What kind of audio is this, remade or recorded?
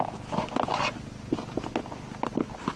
recorded